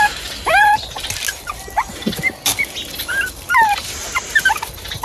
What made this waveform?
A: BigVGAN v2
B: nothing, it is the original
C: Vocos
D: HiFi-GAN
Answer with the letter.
B